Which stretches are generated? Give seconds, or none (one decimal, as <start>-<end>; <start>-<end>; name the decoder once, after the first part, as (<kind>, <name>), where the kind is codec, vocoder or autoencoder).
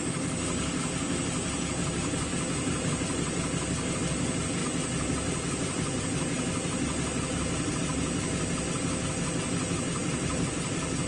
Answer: 10.0-11.1 (vocoder, BigVGAN v2)